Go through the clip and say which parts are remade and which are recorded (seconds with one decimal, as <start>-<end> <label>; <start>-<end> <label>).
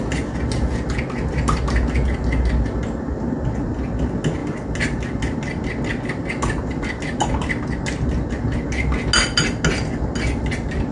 0.0-10.9 recorded